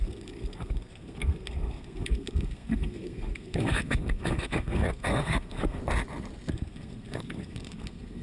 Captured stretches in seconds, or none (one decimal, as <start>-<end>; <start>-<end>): 5.8-6.5